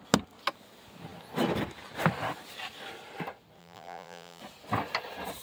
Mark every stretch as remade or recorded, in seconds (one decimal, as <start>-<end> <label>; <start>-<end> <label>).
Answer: 0.0-3.6 recorded; 3.6-4.4 remade; 4.4-5.4 recorded